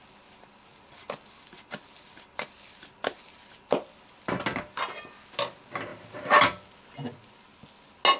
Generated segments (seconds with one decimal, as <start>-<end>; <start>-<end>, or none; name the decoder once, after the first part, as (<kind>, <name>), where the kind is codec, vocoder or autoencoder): none